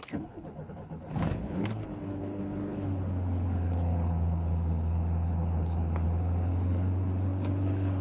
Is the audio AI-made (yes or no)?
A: yes